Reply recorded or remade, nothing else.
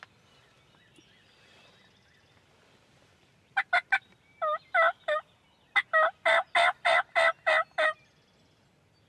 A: recorded